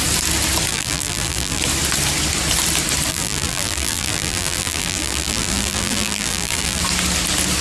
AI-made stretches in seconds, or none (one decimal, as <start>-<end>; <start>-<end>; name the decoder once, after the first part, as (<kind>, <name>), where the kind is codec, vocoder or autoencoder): 0.7-1.6 (vocoder, BigVGAN v2); 3.1-6.8